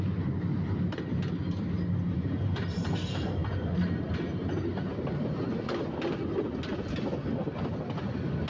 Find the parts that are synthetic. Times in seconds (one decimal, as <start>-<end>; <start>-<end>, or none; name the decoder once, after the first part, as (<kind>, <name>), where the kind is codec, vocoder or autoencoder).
none